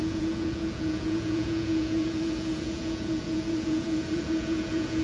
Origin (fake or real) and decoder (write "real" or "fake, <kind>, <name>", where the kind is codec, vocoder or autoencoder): fake, vocoder, Vocos